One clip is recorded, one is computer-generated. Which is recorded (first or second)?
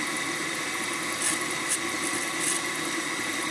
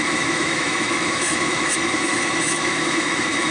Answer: first